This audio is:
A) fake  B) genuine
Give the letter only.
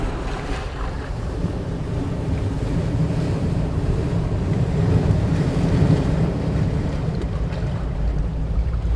A